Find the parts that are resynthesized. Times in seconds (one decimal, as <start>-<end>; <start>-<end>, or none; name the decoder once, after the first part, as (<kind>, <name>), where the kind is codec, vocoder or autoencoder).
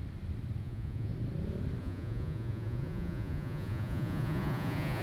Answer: 0.6-1.1 (vocoder, Vocos); 1.8-5.0